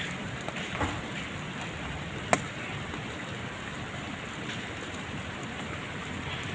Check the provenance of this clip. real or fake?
real